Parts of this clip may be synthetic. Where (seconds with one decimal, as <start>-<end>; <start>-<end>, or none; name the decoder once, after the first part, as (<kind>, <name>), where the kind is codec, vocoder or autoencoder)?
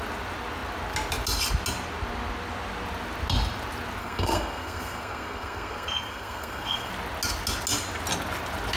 4.0-6.9 (codec, SNAC)